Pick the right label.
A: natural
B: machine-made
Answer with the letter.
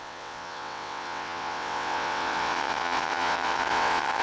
B